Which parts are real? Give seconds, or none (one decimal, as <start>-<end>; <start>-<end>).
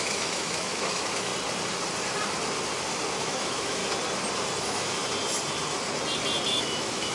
1.3-3.2; 3.8-4.6; 5.0-6.6